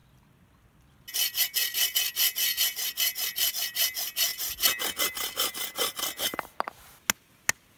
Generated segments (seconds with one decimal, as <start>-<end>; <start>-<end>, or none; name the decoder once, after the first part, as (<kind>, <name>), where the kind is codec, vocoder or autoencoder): none